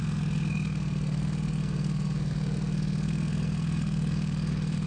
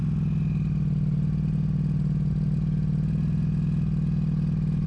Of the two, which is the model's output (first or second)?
first